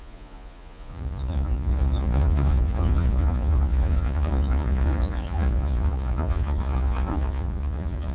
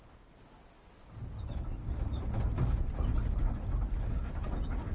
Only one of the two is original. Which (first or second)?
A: second